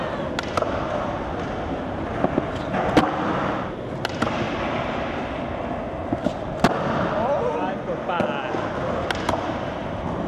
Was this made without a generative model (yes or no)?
yes